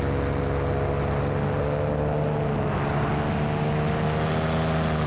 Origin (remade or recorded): recorded